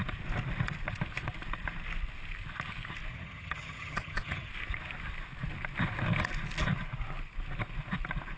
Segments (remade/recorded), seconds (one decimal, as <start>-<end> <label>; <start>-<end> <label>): 0.0-3.1 recorded; 3.1-4.5 remade; 4.5-8.4 recorded